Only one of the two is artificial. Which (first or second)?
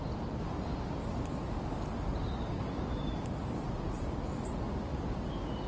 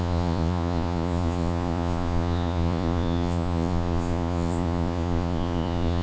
second